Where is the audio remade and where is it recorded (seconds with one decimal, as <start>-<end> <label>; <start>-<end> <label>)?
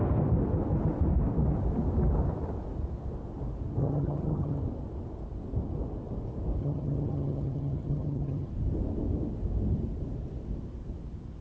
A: 0.0-3.8 recorded; 3.8-4.6 remade; 4.6-6.6 recorded; 6.6-8.5 remade; 8.5-11.4 recorded